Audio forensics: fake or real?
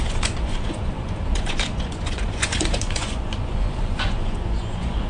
fake